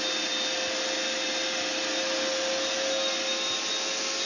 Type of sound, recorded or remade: recorded